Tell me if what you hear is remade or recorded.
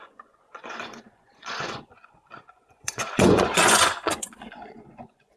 remade